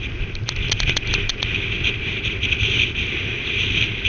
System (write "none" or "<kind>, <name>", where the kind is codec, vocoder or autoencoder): none